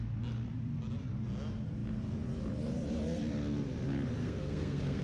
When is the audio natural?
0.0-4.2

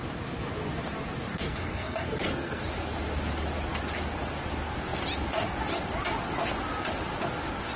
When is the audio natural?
0.0-1.3; 2.6-7.8

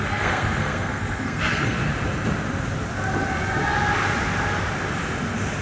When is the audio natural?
1.8-5.6

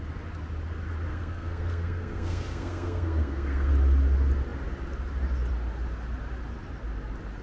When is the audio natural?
0.0-1.1; 3.7-7.4

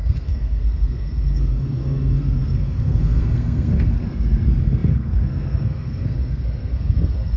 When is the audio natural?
none

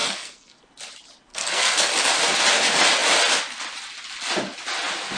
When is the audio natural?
0.6-1.3; 1.9-5.2